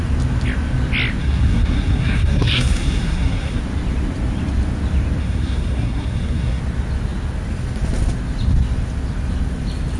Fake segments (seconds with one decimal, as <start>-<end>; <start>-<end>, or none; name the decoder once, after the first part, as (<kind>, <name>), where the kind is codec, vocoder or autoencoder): 1.2-3.6 (codec, SNAC); 5.2-6.6